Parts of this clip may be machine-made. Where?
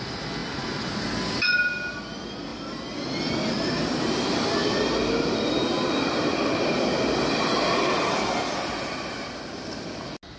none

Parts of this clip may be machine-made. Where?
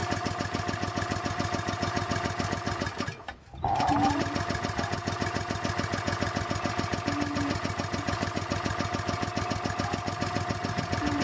none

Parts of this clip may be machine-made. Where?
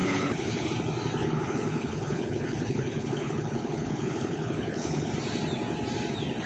0.0-0.7 (codec, HILCodec); 1.2-5.1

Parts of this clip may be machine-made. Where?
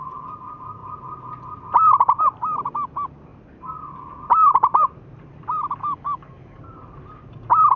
5.8-6.6 (codec, DAC)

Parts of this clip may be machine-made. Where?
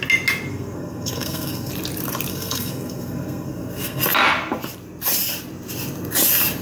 0.5-1.7 (codec, SNAC); 2.3-4.0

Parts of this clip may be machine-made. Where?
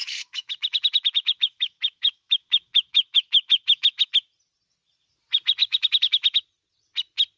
0.0-4.1 (autoencoder, DAC-VAE); 5.6-6.4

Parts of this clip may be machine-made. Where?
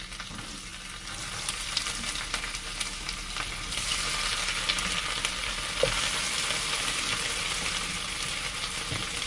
none